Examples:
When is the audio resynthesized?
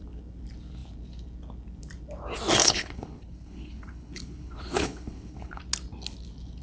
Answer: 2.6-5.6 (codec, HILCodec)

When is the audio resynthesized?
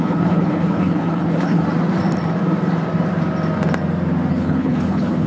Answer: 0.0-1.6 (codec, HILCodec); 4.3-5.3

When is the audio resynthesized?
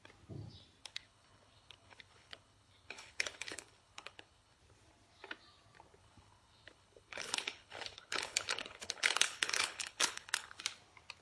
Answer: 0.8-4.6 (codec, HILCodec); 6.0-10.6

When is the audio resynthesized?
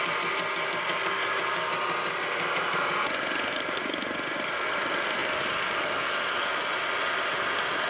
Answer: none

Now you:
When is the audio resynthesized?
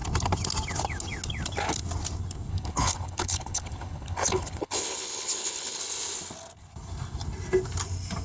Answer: 2.5-5.8 (codec, HILCodec)